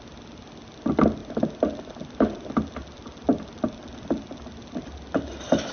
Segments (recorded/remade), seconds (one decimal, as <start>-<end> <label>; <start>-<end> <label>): 0.0-5.7 recorded

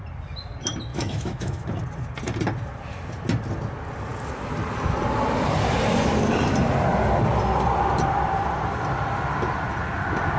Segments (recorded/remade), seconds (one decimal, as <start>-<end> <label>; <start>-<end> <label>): 0.0-0.9 recorded; 0.9-1.8 remade; 1.8-10.4 recorded